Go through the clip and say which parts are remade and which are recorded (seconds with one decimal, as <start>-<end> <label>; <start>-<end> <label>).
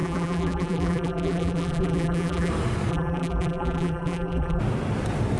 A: 0.0-2.5 remade; 2.5-2.9 recorded; 2.9-4.6 remade; 4.6-5.4 recorded